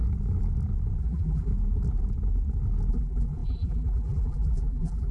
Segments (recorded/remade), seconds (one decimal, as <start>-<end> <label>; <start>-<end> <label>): 0.0-1.0 recorded; 1.0-1.5 remade; 1.5-2.9 recorded; 2.9-5.1 remade